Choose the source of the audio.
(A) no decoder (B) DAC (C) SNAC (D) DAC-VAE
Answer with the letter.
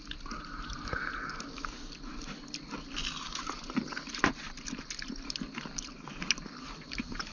A